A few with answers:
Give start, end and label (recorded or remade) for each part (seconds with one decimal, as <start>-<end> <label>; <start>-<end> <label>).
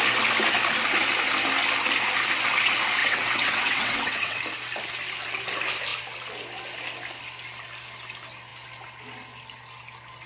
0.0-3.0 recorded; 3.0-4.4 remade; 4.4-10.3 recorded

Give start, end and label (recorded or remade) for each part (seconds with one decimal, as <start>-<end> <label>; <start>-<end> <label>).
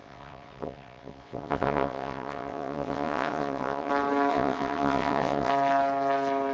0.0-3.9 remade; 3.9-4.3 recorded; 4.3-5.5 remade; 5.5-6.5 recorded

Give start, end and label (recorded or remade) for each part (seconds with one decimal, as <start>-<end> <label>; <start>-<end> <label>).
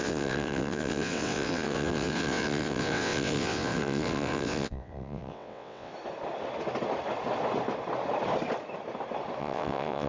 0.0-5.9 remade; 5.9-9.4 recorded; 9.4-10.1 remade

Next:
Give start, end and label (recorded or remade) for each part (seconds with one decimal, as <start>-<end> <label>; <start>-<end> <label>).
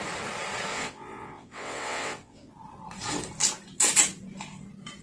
0.0-0.7 recorded; 0.7-2.5 remade; 2.5-5.0 recorded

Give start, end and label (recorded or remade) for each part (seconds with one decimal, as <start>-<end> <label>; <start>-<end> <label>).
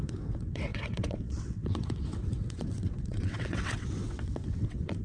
0.0-5.0 remade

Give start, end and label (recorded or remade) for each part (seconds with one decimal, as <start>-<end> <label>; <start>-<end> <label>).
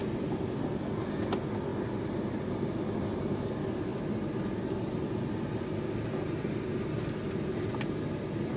0.0-8.6 recorded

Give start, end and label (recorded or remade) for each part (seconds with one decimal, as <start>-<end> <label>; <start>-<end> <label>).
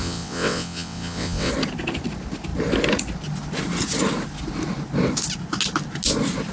0.0-1.5 remade; 1.5-6.5 recorded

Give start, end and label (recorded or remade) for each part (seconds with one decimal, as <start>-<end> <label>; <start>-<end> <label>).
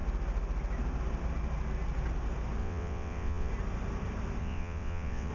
0.0-2.6 recorded; 2.6-3.5 remade; 3.5-4.4 recorded; 4.4-5.3 remade